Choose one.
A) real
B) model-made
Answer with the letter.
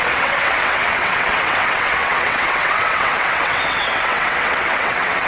B